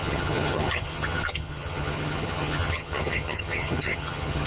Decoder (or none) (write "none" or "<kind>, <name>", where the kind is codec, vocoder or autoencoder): vocoder, HiFi-GAN